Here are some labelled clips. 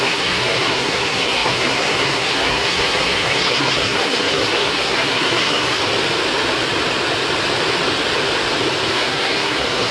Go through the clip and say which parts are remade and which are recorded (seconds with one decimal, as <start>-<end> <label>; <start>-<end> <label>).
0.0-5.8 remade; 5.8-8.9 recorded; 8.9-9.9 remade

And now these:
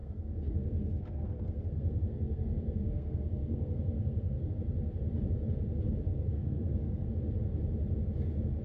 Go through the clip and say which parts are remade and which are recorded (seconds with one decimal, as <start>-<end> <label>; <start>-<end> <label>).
0.0-4.5 remade; 4.5-6.1 recorded; 6.1-7.1 remade; 7.1-8.6 recorded

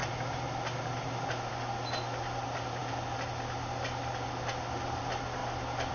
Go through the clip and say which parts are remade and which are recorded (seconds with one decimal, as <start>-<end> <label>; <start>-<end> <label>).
0.0-5.9 recorded

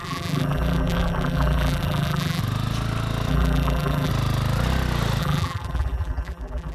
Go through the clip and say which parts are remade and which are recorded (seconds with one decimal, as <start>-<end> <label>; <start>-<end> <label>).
0.0-2.4 remade; 2.4-3.3 recorded; 3.3-4.1 remade; 4.1-5.2 recorded; 5.2-6.7 remade

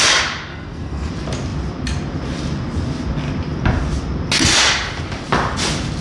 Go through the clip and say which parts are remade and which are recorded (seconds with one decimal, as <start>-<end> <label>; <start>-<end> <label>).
0.0-0.5 recorded; 0.5-1.1 remade; 1.1-6.0 recorded